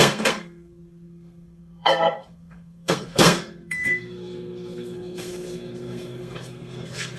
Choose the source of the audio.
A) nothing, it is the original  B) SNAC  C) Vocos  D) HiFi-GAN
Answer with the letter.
B